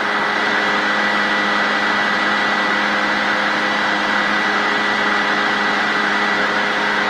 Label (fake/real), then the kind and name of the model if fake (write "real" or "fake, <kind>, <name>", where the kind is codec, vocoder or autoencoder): real